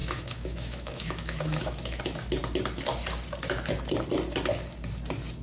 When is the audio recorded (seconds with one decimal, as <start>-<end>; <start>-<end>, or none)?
2.0-5.4